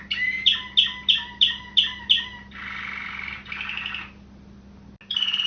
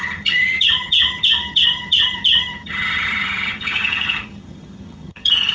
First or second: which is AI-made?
second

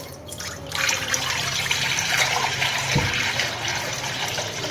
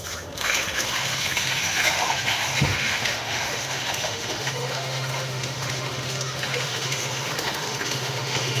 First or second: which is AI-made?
second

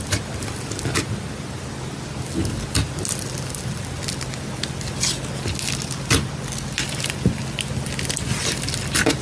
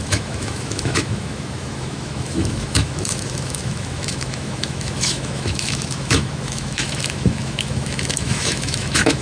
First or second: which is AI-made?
second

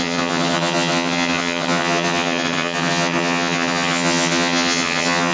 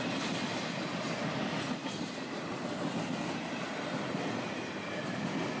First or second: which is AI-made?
first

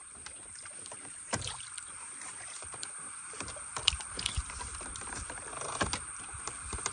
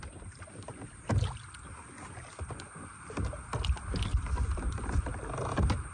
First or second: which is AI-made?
first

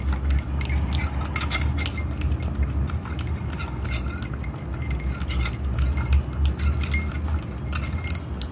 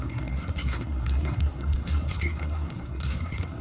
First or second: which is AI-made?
second